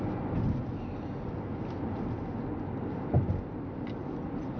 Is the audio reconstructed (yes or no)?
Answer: no